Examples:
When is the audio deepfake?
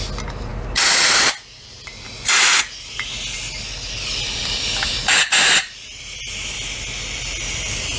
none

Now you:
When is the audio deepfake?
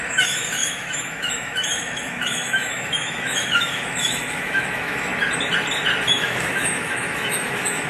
0.0-5.1; 6.1-7.9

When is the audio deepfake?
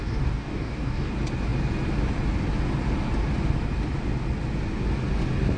0.0-1.1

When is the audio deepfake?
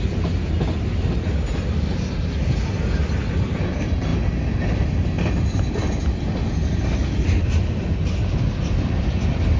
none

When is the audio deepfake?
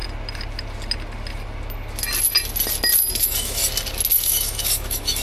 3.1-3.6; 4.2-5.2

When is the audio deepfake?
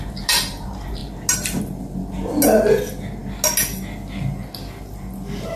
none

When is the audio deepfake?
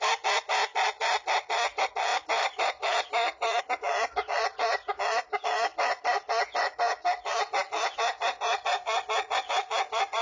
2.1-3.6